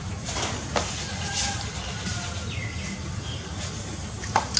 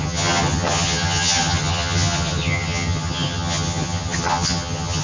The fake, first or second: second